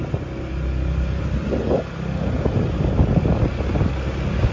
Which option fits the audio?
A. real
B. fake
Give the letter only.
A